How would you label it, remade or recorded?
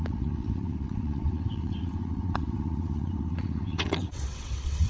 remade